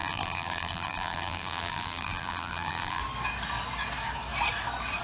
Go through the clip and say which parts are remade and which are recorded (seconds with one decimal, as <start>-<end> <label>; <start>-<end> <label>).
0.0-3.0 remade; 3.0-5.0 recorded